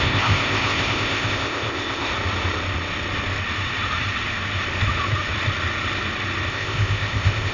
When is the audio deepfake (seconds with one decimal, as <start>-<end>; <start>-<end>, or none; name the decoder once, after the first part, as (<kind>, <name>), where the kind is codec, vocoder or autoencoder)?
0.0-2.1 (codec, ZipCodec); 6.5-7.5